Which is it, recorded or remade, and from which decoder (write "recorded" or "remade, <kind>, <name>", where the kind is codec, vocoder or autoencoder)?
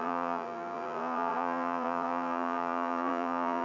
remade, vocoder, BigVGAN v2